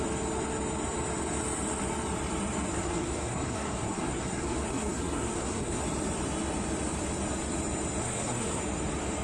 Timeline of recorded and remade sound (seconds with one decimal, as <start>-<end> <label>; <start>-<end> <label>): 0.0-2.7 recorded; 2.7-5.8 remade; 5.8-8.0 recorded; 8.0-8.6 remade; 8.6-9.2 recorded